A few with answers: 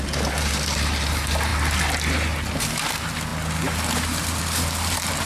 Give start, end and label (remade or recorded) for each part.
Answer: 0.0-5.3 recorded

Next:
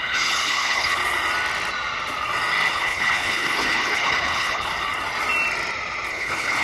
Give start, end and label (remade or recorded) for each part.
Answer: 0.0-1.0 remade; 1.0-2.7 recorded; 2.7-4.7 remade; 4.7-6.1 recorded; 6.1-6.6 remade

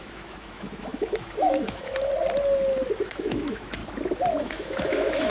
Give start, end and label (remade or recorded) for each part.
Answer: 0.0-2.1 remade; 2.1-3.0 recorded; 3.0-3.8 remade; 3.8-4.4 recorded; 4.4-5.3 remade

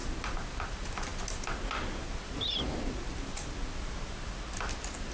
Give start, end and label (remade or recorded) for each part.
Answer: 0.0-5.1 recorded

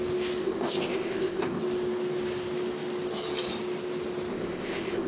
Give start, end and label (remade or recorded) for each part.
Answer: 0.0-0.4 recorded; 0.4-1.6 remade; 1.6-4.3 recorded; 4.3-5.1 remade

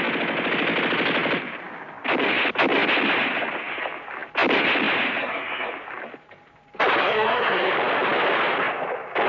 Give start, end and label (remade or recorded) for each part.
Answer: 0.0-5.2 recorded; 5.2-5.7 remade; 5.7-7.0 recorded; 7.0-7.7 remade; 7.7-9.3 recorded